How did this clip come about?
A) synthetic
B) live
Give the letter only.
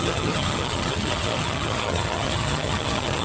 A